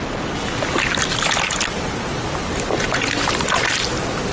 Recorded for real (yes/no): yes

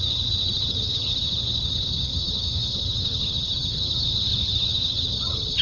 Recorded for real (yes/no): no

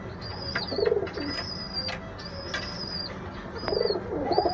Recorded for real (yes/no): yes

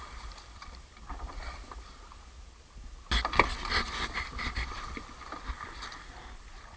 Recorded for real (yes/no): yes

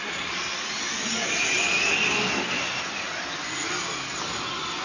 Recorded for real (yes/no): yes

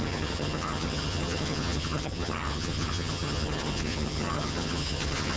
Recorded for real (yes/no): no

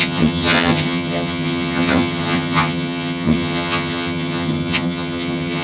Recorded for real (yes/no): no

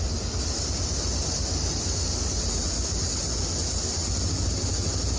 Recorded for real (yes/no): yes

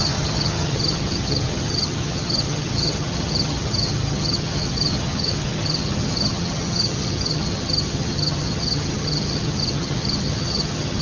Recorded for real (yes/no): no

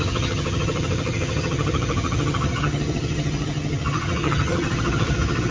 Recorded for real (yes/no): no